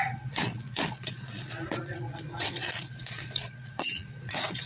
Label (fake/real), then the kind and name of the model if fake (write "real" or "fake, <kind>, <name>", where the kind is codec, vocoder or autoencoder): fake, vocoder, Vocos